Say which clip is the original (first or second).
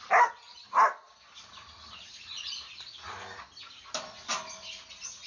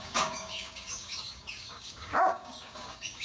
first